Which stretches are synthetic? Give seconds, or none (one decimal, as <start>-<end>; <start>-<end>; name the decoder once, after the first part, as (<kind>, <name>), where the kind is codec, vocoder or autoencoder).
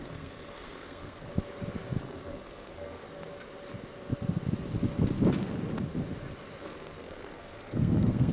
0.0-1.3 (codec, SNAC); 2.0-3.0; 6.6-8.3